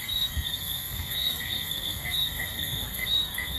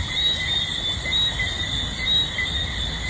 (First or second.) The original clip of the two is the second